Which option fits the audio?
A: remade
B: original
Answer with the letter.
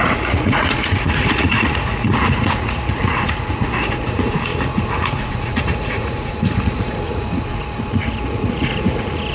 A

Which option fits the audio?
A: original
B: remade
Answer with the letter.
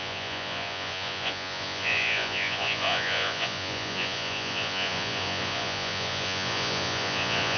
B